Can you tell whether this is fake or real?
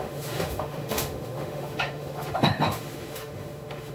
fake